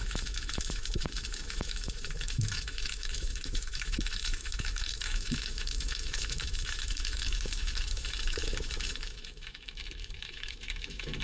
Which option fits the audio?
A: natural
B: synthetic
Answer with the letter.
B